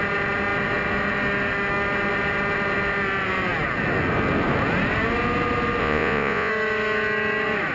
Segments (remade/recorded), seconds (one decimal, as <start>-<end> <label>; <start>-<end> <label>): 0.0-5.8 recorded; 5.8-6.5 remade; 6.5-7.7 recorded